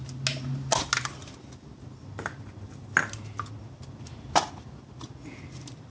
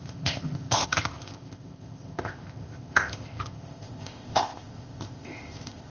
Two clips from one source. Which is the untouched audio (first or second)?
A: first